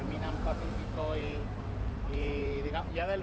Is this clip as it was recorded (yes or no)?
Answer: no